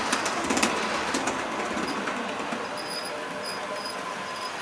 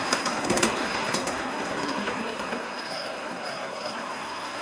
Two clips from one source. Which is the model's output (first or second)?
second